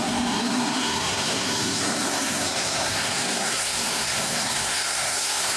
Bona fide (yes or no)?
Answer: no